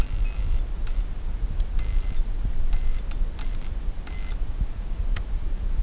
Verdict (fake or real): real